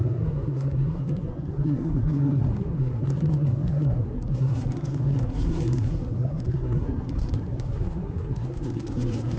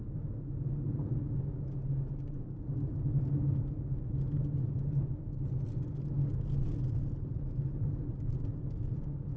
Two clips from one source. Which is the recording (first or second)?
second